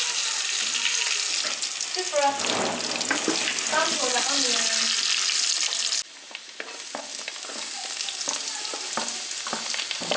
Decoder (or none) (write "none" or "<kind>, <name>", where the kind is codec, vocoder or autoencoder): none